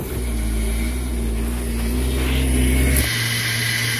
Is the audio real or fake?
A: real